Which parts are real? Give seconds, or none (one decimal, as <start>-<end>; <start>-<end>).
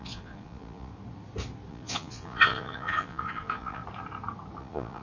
0.9-1.7; 3.8-4.6